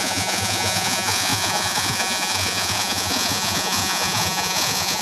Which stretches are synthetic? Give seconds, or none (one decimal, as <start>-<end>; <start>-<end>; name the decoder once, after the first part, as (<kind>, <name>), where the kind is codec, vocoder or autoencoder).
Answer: 0.0-5.0 (vocoder, Vocos)